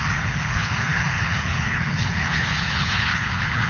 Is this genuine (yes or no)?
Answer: no